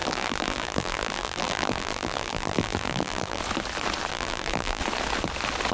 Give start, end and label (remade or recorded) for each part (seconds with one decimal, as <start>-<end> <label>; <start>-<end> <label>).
0.0-3.4 remade; 3.4-4.1 recorded; 4.1-4.8 remade; 4.8-5.7 recorded